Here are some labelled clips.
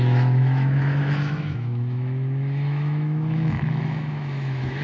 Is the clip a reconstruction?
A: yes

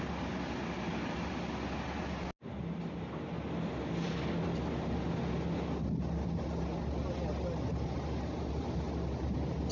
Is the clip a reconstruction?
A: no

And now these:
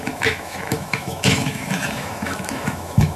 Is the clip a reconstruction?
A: yes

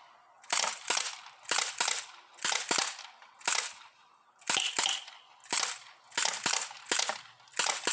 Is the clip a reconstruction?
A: no